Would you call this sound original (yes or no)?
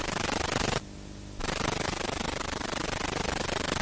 yes